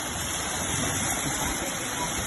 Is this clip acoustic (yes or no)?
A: no